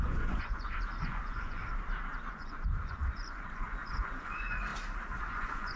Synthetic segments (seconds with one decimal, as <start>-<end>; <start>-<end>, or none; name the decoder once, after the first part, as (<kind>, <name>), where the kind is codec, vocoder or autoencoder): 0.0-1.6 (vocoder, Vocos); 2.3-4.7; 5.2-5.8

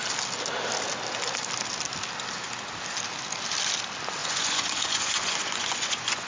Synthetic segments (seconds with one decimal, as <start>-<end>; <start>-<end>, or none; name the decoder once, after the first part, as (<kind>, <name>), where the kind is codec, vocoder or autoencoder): 4.2-6.3 (vocoder, Vocos)

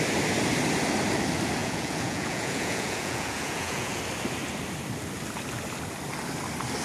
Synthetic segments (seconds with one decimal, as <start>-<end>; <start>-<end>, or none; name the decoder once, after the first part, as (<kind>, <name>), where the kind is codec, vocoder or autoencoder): 1.6-4.0 (vocoder, Vocos)

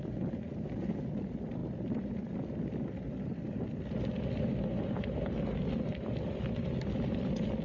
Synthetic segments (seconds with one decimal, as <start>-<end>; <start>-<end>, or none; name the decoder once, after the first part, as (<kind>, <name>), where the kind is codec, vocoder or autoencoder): none

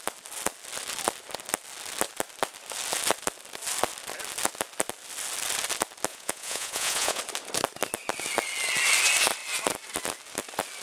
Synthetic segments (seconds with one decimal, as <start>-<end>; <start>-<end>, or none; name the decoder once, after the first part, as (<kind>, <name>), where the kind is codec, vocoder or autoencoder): 6.1-7.2 (vocoder, Vocos)

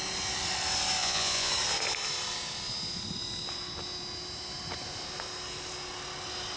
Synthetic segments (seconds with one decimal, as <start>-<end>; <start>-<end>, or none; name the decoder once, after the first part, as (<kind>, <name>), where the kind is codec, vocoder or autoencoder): 1.0-1.5 (vocoder, Vocos)